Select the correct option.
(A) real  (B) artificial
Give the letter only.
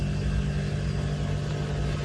A